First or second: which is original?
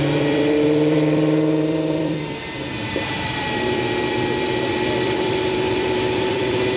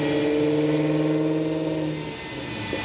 second